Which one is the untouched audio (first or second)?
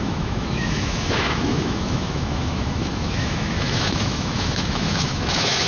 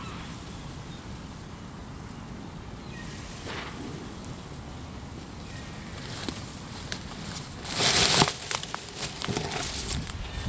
second